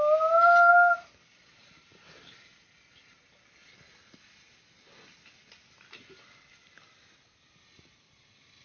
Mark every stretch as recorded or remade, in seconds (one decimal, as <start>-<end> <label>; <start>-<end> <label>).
0.0-8.6 recorded